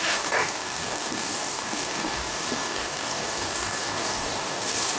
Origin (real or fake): fake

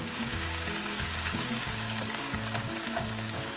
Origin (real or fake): fake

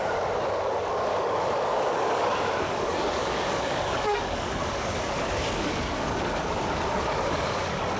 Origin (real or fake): fake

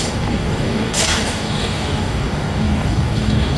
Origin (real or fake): fake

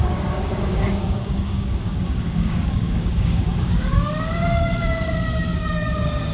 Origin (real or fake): fake